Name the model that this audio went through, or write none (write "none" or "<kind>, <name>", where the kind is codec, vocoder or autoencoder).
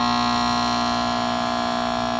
none